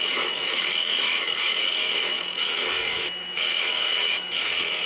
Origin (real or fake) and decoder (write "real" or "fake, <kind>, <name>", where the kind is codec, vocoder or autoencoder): fake, autoencoder, DAC-VAE